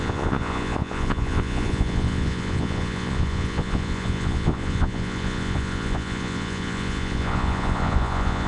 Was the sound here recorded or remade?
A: remade